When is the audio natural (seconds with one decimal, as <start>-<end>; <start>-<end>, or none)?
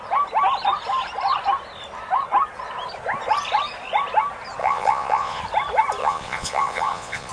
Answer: 0.0-4.6; 5.4-6.0